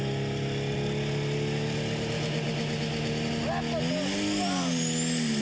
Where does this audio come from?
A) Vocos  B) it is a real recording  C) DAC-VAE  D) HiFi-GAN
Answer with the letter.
B